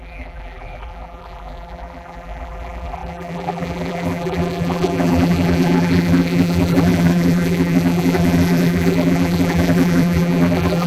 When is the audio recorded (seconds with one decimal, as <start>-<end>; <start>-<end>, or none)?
none